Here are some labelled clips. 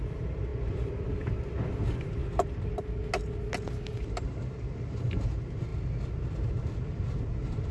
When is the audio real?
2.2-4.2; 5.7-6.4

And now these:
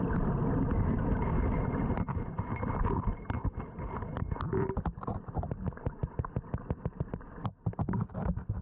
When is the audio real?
0.0-8.6

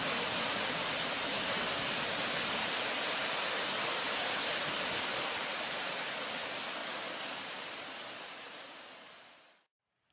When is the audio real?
6.8-7.3